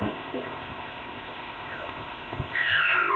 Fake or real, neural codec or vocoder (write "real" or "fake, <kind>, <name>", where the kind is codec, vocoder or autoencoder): fake, codec, ZipCodec